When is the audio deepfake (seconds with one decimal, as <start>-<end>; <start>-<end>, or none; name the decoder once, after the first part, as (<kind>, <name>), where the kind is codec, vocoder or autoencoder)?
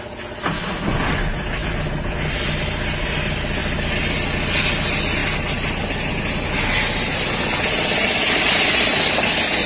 none